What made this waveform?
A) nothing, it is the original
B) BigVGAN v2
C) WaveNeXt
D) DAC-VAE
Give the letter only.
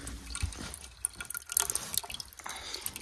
A